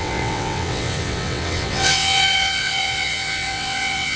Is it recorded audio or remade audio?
remade